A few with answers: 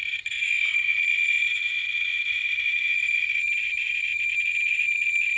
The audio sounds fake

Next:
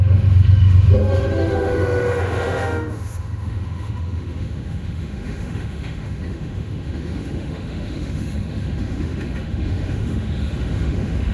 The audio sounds fake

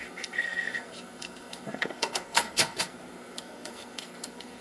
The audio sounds fake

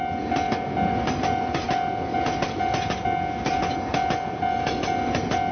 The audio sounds real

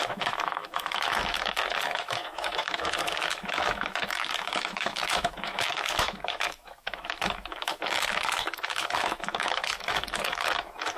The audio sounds fake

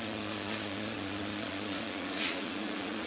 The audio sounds fake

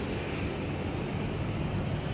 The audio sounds real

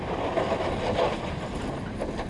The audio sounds real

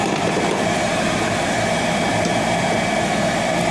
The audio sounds fake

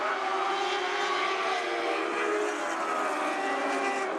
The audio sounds real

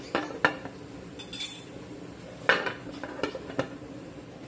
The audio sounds real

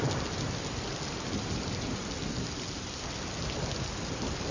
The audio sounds real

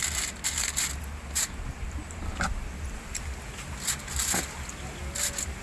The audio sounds real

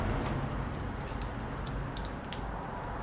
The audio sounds real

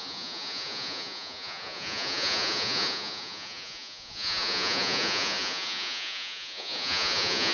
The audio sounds fake